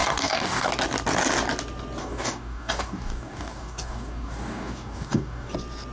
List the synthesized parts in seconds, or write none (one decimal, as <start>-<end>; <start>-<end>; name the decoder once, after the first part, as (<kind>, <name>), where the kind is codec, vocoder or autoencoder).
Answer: 0.0-0.7 (codec, DAC); 2.0-5.5